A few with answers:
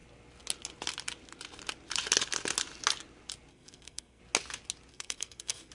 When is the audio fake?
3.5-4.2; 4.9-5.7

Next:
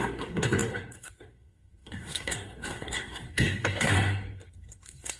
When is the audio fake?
0.0-5.2

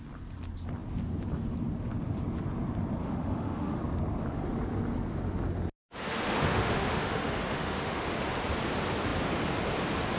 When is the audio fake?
3.0-3.8; 6.0-8.2

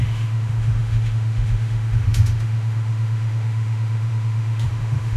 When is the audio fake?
0.0-5.2

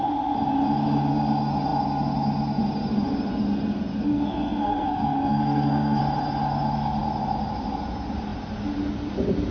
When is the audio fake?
4.1-6.0

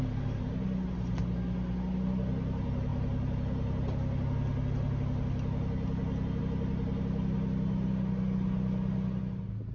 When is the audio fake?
none